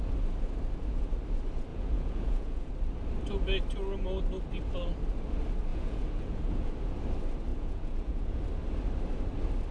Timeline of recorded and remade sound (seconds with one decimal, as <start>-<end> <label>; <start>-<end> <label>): 0.0-1.7 recorded; 1.7-2.7 remade; 2.7-5.7 recorded; 5.7-6.7 remade; 6.7-7.5 recorded; 7.5-8.4 remade; 8.4-9.7 recorded